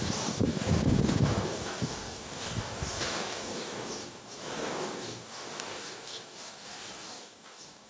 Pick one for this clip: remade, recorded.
remade